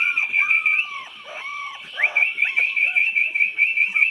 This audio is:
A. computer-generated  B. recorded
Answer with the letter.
A